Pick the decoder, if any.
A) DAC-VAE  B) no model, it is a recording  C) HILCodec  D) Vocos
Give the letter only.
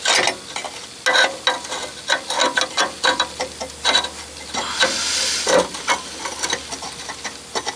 B